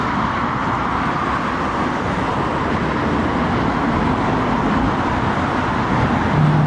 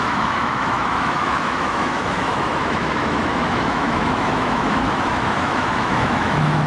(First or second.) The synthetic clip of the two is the second